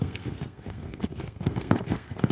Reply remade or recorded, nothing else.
remade